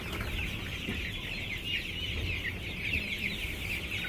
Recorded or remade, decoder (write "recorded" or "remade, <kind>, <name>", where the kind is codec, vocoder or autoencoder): recorded